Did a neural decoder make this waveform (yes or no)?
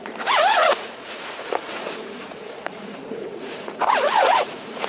yes